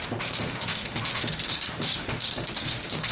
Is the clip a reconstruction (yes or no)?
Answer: yes